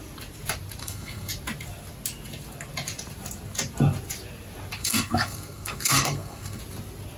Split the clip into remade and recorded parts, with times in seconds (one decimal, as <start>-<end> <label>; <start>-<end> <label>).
0.0-0.8 recorded; 0.8-1.3 remade; 1.3-4.8 recorded; 4.8-6.6 remade; 6.6-7.2 recorded